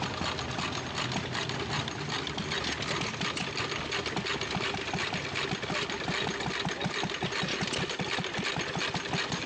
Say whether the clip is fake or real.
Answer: real